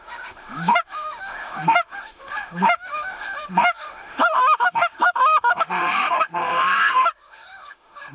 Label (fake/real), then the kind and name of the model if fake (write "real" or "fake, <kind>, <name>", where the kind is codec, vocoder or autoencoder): fake, autoencoder, DAC-VAE